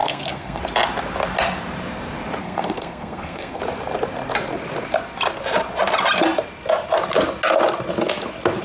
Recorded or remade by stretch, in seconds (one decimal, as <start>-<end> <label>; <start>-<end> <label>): 0.0-0.6 remade; 0.6-2.4 recorded; 2.4-3.6 remade; 3.6-8.6 recorded